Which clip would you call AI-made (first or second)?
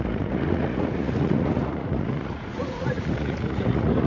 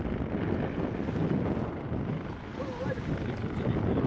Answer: first